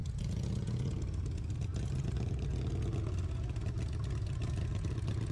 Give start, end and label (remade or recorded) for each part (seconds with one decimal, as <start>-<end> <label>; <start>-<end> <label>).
0.0-1.0 remade; 1.0-5.3 recorded